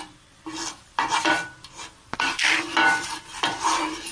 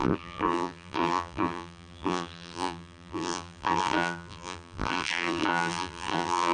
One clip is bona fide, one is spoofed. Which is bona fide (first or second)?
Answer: first